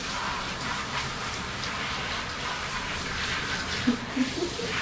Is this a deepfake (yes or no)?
yes